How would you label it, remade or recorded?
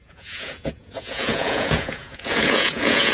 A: remade